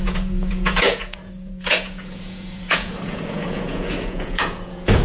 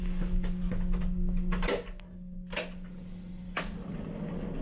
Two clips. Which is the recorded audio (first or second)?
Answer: second